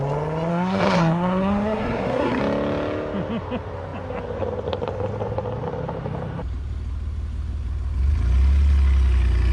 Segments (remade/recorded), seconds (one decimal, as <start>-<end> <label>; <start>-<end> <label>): 0.0-0.5 recorded; 0.5-2.4 remade; 2.4-9.5 recorded